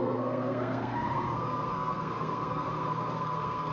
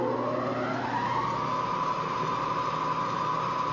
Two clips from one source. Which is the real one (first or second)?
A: second